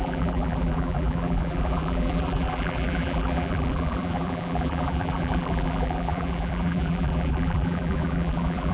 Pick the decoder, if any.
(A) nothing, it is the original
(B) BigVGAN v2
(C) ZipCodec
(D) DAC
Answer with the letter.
B